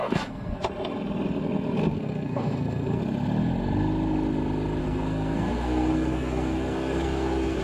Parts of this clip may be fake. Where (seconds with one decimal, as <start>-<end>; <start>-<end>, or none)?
0.0-0.6; 1.8-3.0; 4.8-7.6